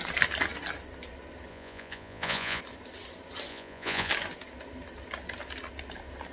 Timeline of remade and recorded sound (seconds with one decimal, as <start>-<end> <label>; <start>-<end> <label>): 0.0-1.5 recorded; 1.5-2.6 remade; 2.6-3.5 recorded; 3.5-4.1 remade; 4.1-6.3 recorded